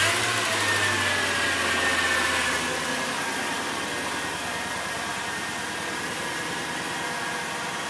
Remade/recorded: recorded